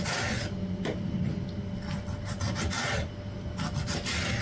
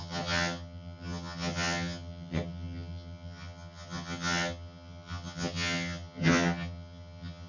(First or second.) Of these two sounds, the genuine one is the first